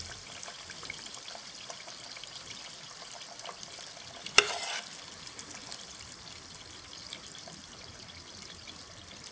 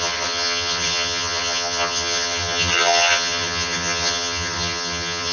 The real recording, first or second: first